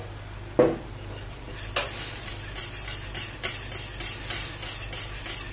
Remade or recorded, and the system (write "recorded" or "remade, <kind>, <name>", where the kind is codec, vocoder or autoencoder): recorded